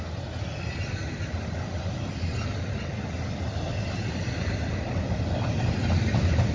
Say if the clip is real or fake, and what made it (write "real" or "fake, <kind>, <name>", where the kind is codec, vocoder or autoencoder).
real